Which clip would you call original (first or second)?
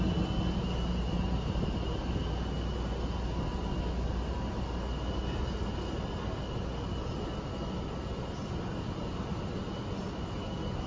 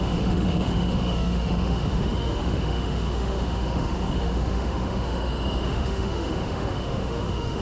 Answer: first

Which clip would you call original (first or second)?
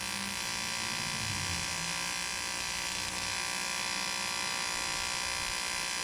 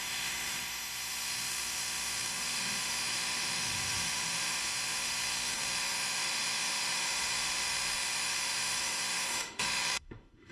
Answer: first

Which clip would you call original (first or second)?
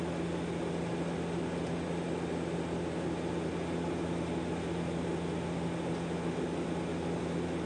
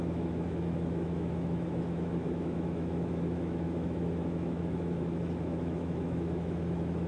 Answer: first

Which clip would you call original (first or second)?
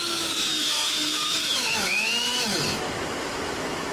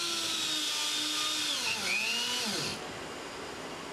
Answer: second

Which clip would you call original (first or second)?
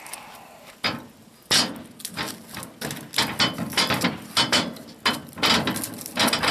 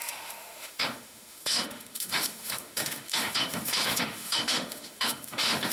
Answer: first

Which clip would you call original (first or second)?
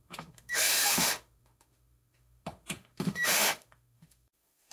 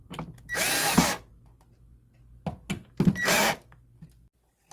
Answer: second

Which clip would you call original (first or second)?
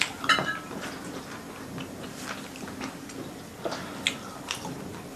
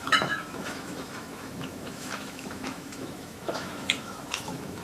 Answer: first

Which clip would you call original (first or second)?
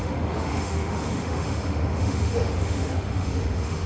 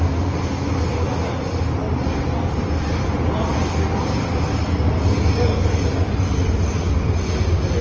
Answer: second